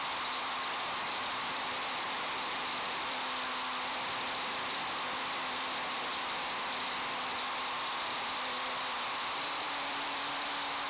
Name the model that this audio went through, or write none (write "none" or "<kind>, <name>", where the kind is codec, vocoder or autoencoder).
vocoder, BigVGAN v2